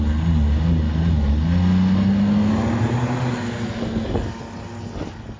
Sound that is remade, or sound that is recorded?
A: recorded